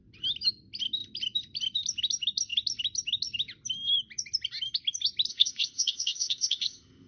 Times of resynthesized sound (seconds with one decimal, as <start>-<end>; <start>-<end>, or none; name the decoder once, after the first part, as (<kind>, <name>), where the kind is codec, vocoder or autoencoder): 5.3-7.1 (codec, ZipCodec)